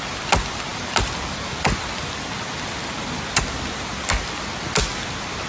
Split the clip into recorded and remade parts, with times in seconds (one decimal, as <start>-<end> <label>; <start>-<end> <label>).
0.0-5.5 recorded